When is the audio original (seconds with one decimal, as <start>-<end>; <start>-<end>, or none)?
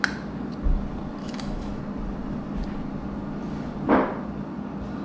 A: 0.0-1.2; 1.8-5.0